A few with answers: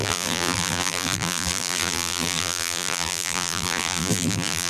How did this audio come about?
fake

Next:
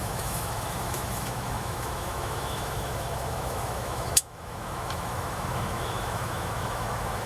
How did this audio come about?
fake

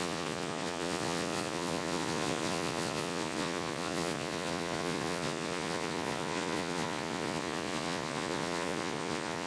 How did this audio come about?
fake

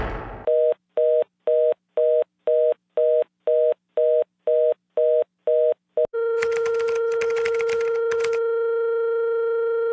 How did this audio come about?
real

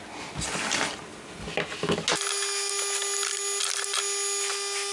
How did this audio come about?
real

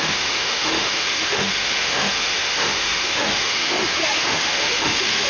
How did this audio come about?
fake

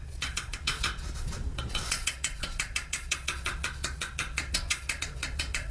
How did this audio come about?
fake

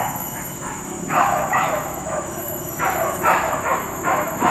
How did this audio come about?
fake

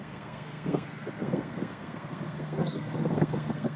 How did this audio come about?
fake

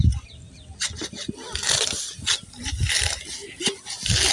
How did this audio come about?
real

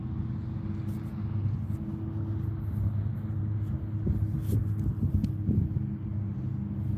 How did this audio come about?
real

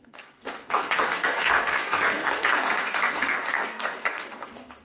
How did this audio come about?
fake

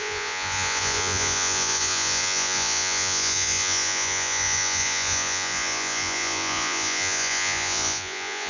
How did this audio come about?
fake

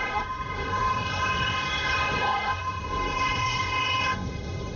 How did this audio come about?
fake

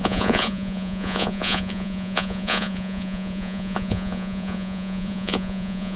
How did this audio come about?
fake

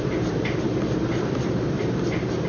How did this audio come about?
fake